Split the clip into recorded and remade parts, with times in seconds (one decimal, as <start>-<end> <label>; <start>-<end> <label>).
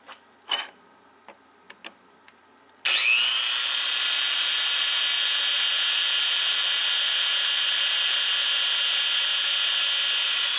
0.0-10.6 recorded